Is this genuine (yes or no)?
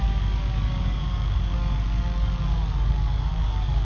no